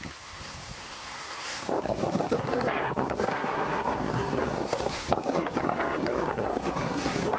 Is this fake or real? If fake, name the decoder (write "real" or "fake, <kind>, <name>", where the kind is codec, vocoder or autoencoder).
fake, codec, SNAC